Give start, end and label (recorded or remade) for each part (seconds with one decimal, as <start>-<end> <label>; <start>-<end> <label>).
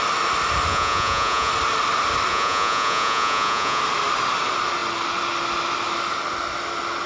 0.0-0.7 recorded; 0.7-1.5 remade; 1.5-2.3 recorded; 2.3-3.8 remade; 3.8-7.1 recorded